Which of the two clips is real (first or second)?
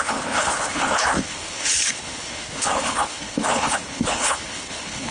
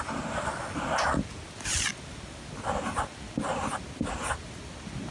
second